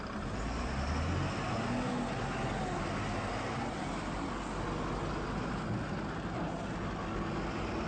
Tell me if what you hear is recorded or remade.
recorded